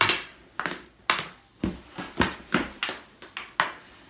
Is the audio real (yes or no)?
yes